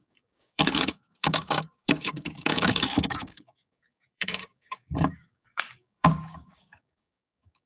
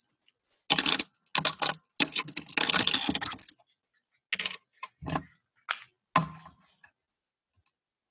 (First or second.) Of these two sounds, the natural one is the second